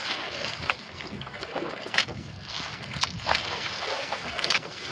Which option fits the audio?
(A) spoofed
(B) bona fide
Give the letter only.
A